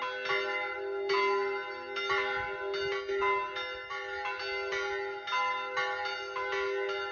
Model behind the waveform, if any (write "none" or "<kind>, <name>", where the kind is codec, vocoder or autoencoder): none